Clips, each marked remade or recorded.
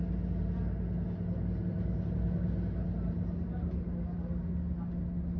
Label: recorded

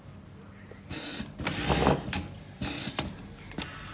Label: recorded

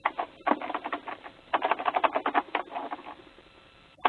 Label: recorded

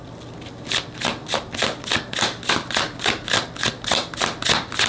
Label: recorded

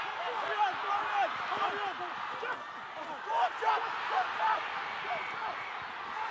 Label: recorded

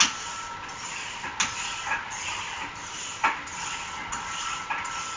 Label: recorded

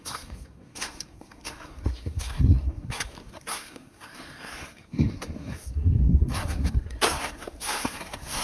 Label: remade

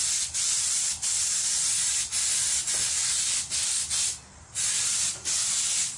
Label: recorded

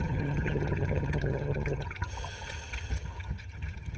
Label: remade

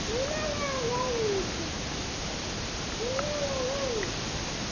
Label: recorded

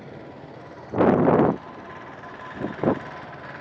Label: recorded